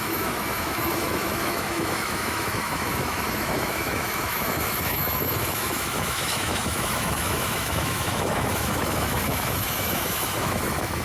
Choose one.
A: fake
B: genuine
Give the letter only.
A